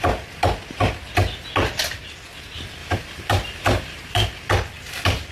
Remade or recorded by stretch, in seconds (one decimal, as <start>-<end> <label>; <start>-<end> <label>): 0.0-2.8 recorded; 2.8-4.5 remade; 4.5-5.3 recorded